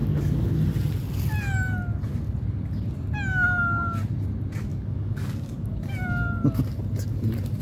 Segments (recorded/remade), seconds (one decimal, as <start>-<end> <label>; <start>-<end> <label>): 0.0-0.5 remade; 0.5-4.7 recorded; 4.7-5.9 remade; 5.9-7.6 recorded